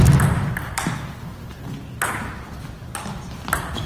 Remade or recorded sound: recorded